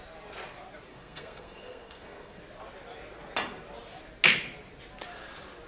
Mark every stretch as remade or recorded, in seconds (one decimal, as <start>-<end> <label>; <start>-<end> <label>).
0.0-0.9 recorded; 0.9-2.4 remade; 2.4-5.7 recorded

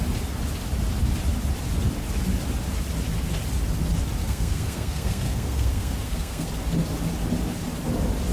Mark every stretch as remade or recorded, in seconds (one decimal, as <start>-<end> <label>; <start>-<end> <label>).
0.0-4.2 recorded; 4.2-6.5 remade; 6.5-8.3 recorded

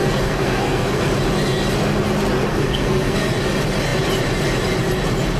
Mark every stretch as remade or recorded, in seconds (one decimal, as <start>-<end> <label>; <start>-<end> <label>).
0.0-1.1 remade; 1.1-2.5 recorded; 2.5-3.3 remade; 3.3-5.4 recorded

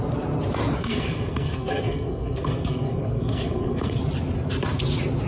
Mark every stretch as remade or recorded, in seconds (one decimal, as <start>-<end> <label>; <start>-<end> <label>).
0.0-0.8 recorded; 0.8-4.0 remade; 4.0-5.3 recorded

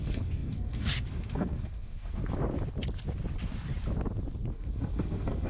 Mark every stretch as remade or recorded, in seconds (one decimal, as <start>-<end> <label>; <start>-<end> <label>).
0.0-2.2 remade; 2.2-4.5 recorded; 4.5-5.5 remade

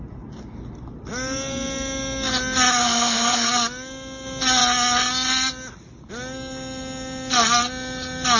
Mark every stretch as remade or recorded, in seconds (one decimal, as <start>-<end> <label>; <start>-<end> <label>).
0.0-2.8 recorded; 2.8-3.5 remade; 3.5-8.4 recorded

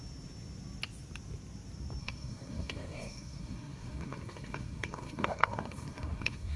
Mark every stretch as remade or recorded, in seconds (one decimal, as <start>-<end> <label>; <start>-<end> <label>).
0.0-2.0 recorded; 2.0-6.6 remade